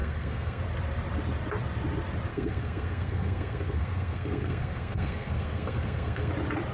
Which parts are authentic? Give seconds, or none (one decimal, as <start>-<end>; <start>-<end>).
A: 0.6-2.3; 6.3-6.7